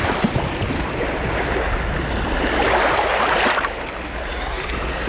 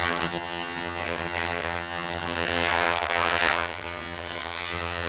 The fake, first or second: second